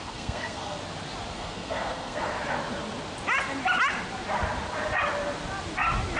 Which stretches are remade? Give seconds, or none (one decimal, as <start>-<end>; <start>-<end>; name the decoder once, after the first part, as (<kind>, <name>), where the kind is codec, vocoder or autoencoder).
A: 0.0-0.8 (codec, SNAC); 1.3-2.3